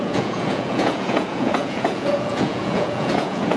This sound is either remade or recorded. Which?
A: remade